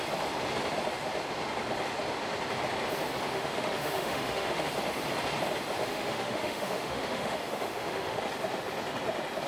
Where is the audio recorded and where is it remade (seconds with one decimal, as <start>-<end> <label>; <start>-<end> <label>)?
0.0-3.3 recorded; 3.3-4.7 remade; 4.7-5.8 recorded; 5.8-8.2 remade; 8.2-9.5 recorded